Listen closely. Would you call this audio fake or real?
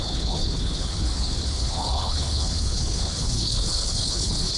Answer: fake